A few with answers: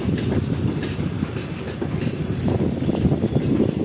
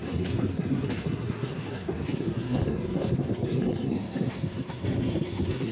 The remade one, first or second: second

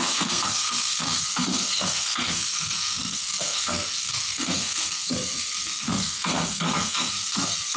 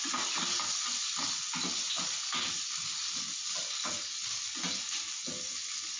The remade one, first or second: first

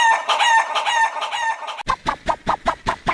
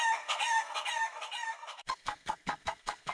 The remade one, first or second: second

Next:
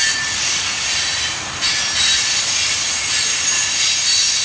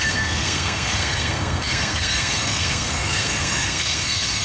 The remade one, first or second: second